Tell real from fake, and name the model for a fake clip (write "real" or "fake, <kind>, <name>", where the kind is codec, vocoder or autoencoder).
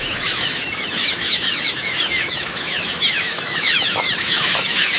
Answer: fake, autoencoder, DAC-VAE